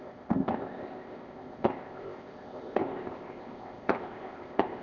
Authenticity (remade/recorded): remade